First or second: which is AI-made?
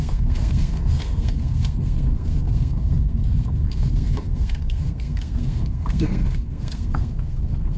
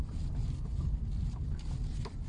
first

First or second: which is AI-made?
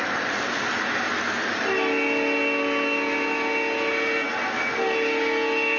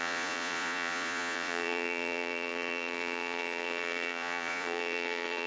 second